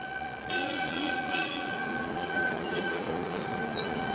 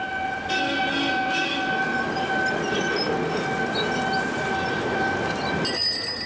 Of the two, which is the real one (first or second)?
second